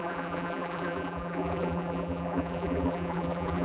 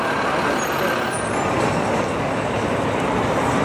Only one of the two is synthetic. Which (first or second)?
first